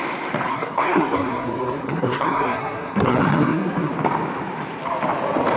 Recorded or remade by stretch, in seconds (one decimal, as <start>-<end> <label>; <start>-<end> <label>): 0.0-0.5 recorded; 0.5-3.9 remade; 3.9-5.6 recorded